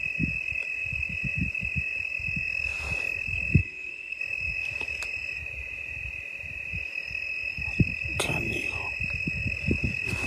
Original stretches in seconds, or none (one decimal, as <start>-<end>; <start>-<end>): 0.0-3.6; 4.2-10.3